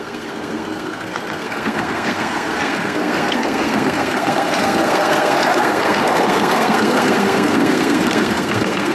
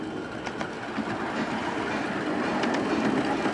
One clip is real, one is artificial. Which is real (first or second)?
second